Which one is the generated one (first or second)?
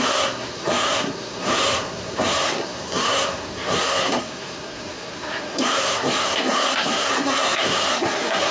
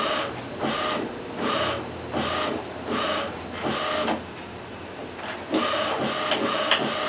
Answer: first